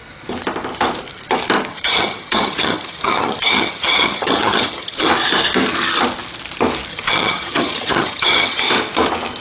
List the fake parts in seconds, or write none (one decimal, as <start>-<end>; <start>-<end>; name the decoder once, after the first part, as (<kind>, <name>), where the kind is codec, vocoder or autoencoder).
1.7-5.1 (vocoder, HiFi-GAN); 6.9-8.6